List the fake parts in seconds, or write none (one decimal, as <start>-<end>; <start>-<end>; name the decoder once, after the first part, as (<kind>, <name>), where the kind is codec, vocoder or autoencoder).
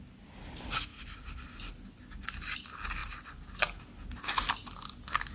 0.9-1.7 (vocoder, BigVGAN v2); 3.0-3.6